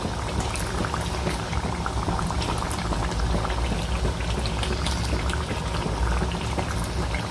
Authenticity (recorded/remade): recorded